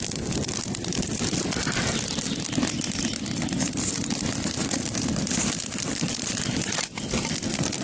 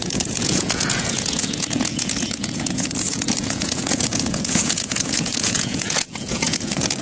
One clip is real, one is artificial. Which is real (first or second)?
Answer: first